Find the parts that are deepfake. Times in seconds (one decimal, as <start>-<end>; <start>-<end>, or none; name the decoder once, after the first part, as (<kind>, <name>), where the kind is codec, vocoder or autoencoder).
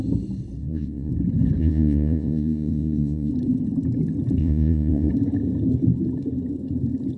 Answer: 0.6-1.1 (vocoder, Vocos); 1.6-3.3; 4.4-5.1